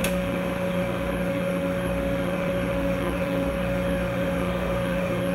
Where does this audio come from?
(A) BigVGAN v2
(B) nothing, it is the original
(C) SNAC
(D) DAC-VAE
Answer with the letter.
D